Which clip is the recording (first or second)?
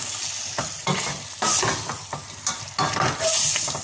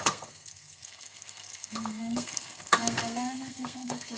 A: first